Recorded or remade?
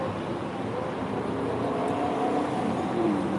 recorded